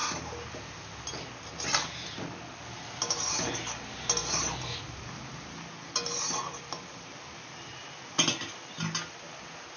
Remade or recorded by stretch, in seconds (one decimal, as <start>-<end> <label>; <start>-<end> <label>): 0.0-9.8 recorded